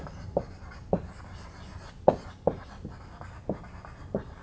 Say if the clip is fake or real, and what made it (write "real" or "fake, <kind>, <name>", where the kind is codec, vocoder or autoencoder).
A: real